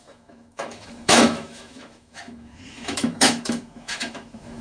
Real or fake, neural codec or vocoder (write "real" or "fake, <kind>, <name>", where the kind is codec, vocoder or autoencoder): fake, autoencoder, DAC-VAE